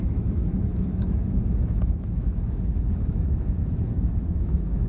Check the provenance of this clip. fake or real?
fake